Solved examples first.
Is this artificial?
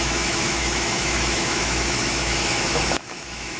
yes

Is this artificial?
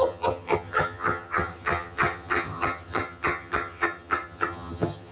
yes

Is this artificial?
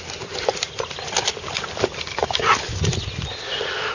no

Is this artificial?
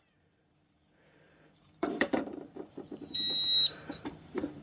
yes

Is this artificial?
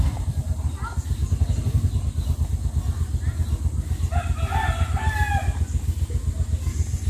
no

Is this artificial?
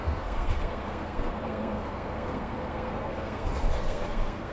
yes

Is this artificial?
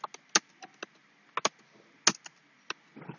no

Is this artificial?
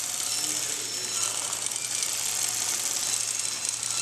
no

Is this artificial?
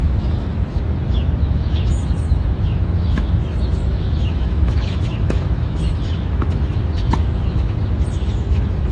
yes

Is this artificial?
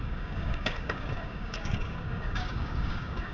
yes